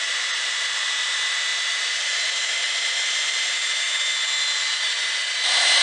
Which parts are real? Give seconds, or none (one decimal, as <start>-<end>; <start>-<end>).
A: none